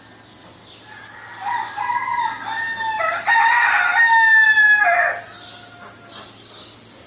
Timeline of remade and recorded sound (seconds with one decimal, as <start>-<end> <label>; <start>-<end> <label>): 0.0-7.1 recorded